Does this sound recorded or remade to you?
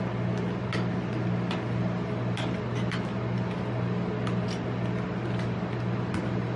recorded